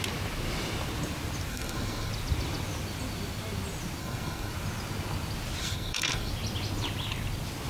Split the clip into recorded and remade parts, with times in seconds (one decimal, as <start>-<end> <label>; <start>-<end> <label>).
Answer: 0.0-1.5 recorded; 1.5-2.1 remade; 2.1-4.0 recorded; 4.0-4.5 remade; 4.5-5.6 recorded; 5.6-6.3 remade; 6.3-7.7 recorded